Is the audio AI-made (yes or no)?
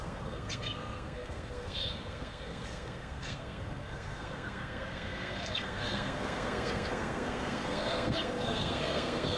yes